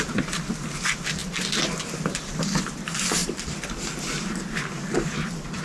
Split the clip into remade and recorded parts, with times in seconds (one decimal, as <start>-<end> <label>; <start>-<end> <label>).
0.0-5.6 recorded